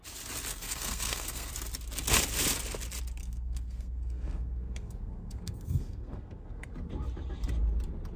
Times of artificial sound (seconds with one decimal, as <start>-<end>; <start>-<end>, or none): 0.5-1.5; 3.2-6.7